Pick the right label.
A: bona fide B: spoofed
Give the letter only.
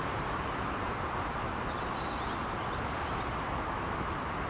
A